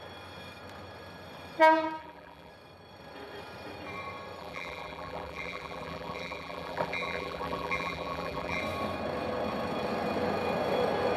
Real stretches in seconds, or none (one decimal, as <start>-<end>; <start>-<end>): 0.0-2.0; 2.5-4.4; 8.6-11.2